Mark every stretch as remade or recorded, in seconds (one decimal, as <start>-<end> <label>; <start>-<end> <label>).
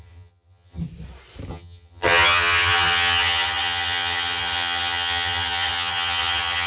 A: 0.0-0.8 remade; 0.8-1.5 recorded; 1.5-6.7 remade